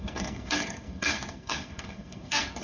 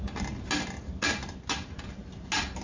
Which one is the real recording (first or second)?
second